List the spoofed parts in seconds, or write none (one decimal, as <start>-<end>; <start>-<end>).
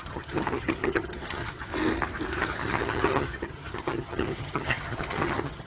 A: 0.0-1.7; 2.4-5.7